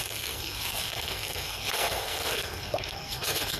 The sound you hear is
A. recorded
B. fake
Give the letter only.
B